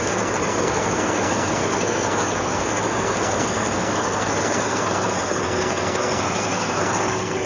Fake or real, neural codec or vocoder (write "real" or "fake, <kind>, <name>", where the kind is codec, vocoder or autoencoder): fake, codec, SNAC